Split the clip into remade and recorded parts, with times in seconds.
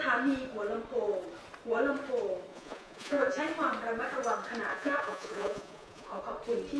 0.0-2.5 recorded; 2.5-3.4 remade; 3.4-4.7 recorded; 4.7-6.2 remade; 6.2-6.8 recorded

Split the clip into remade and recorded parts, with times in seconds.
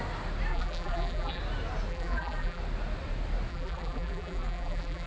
0.0-0.5 recorded; 0.5-1.4 remade; 1.4-1.9 recorded; 1.9-2.6 remade; 2.6-3.5 recorded; 3.5-5.1 remade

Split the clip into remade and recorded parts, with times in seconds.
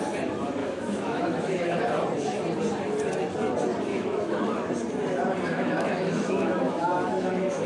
0.0-0.6 recorded; 0.6-1.8 remade; 1.8-3.9 recorded; 3.9-4.7 remade; 4.7-5.5 recorded; 5.5-7.7 remade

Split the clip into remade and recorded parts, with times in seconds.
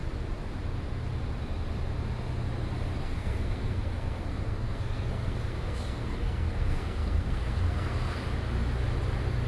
0.0-3.0 recorded; 3.0-8.2 remade; 8.2-9.5 recorded